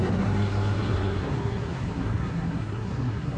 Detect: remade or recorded remade